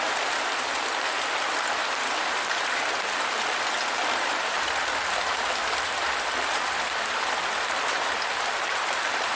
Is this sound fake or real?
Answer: fake